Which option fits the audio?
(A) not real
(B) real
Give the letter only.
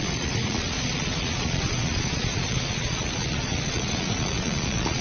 A